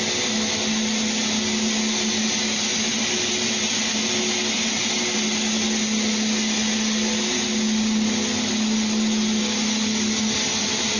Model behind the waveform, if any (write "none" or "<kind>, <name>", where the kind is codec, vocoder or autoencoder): none